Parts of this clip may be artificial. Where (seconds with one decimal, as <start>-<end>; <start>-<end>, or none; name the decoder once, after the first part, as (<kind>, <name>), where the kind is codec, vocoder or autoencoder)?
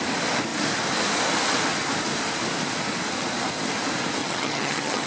4.2-5.1 (vocoder, HiFi-GAN)